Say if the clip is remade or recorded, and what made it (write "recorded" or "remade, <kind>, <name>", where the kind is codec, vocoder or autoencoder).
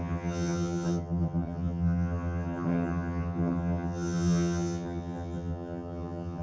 remade, vocoder, HiFi-GAN